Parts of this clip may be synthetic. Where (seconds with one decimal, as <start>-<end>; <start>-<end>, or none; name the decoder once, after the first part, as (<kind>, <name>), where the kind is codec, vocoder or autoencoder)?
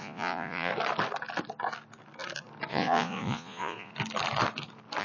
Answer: 0.0-0.7 (vocoder, Vocos); 2.7-3.9